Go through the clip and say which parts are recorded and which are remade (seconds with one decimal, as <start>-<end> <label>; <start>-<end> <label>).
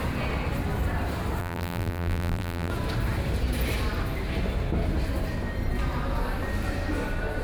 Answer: 0.0-1.4 recorded; 1.4-2.7 remade; 2.7-7.4 recorded